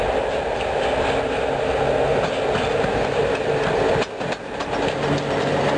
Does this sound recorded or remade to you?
recorded